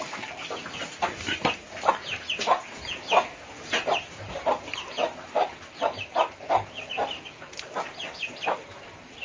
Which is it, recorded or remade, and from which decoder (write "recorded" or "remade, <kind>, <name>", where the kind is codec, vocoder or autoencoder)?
recorded